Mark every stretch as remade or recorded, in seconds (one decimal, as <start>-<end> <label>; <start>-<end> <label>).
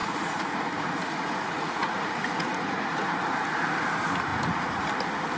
0.0-3.2 remade; 3.2-4.3 recorded; 4.3-4.9 remade; 4.9-5.4 recorded